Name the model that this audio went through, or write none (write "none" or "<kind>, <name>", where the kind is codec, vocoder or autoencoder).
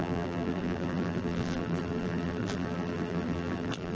vocoder, BigVGAN v2